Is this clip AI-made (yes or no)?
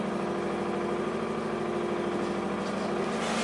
no